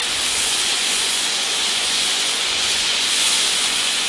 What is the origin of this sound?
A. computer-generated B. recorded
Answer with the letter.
A